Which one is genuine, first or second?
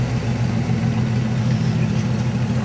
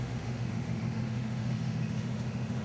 first